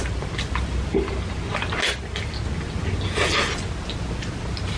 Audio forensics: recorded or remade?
recorded